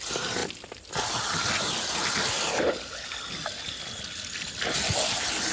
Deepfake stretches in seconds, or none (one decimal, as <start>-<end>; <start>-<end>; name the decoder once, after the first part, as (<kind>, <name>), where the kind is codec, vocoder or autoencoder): none

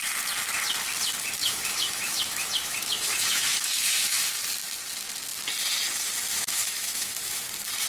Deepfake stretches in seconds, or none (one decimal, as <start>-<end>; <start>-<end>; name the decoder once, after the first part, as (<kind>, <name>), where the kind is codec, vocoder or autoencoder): 1.4-4.3 (autoencoder, DAC-VAE); 6.3-7.4